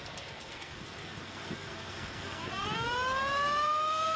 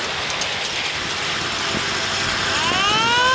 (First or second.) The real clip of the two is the second